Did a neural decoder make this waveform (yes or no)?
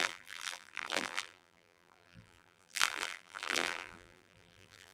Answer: yes